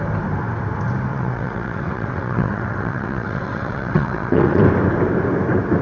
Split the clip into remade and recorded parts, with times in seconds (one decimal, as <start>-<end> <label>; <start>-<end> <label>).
0.0-1.1 recorded; 1.1-4.6 remade; 4.6-5.8 recorded